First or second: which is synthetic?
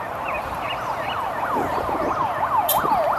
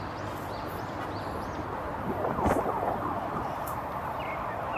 first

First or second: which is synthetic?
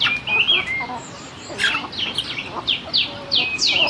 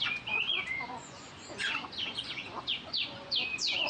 second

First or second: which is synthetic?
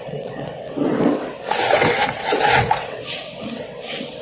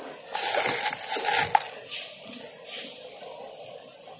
first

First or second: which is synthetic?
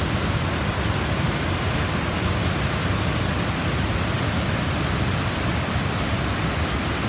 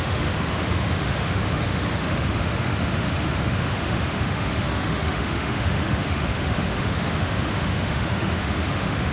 second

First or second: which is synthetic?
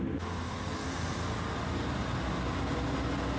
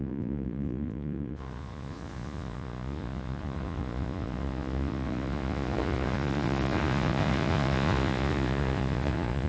second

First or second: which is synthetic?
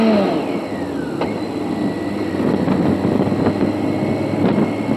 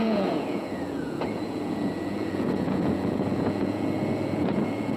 second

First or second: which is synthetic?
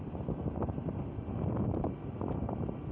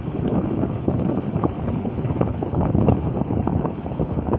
second